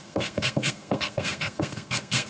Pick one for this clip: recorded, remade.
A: remade